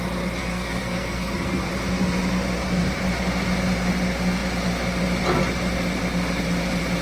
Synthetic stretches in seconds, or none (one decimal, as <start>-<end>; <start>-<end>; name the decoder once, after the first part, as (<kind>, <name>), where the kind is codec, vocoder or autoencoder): 0.4-1.7 (codec, SNAC)